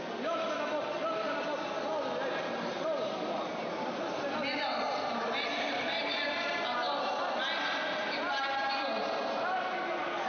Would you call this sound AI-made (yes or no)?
no